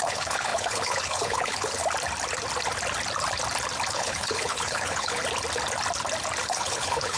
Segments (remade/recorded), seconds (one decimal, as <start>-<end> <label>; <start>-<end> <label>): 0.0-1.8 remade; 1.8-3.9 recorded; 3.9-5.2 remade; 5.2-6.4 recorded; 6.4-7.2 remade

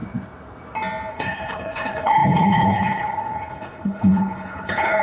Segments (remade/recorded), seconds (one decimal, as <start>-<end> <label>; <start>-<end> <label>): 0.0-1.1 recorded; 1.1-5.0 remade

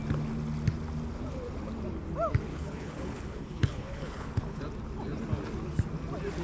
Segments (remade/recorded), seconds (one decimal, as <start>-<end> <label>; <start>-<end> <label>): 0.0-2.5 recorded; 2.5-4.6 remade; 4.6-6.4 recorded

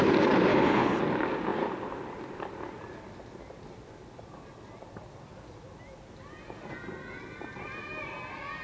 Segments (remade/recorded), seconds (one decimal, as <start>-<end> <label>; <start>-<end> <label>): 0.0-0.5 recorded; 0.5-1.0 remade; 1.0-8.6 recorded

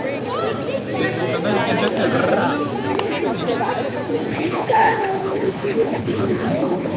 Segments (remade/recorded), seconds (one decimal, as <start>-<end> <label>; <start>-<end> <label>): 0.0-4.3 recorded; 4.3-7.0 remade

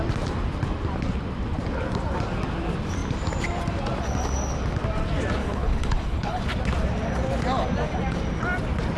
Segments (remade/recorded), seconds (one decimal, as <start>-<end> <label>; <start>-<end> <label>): 0.0-5.4 recorded; 5.4-6.4 remade; 6.4-9.0 recorded

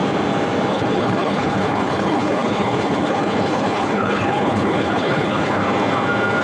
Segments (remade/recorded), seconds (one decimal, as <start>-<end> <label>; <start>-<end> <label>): 0.0-0.7 recorded; 0.7-5.6 remade; 5.6-6.4 recorded

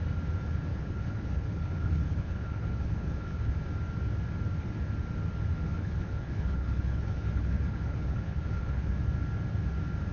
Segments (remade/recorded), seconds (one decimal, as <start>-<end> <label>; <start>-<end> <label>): 0.0-0.7 recorded; 0.7-3.5 remade; 3.5-5.5 recorded; 5.5-8.9 remade; 8.9-10.1 recorded